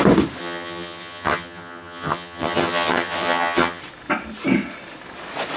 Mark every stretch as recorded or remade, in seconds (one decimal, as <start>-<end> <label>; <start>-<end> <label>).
0.0-0.4 recorded; 0.4-3.8 remade; 3.8-5.6 recorded